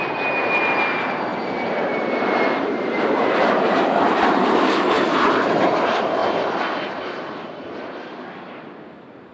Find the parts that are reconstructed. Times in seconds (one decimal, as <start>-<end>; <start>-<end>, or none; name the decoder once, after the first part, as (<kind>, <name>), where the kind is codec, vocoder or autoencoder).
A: 1.3-5.3 (vocoder, BigVGAN v2)